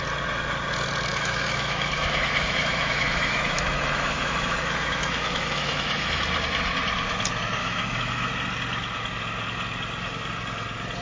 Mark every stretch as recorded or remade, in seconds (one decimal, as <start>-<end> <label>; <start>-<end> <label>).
0.0-1.1 recorded; 1.1-6.2 remade; 6.2-7.6 recorded; 7.6-8.3 remade; 8.3-11.0 recorded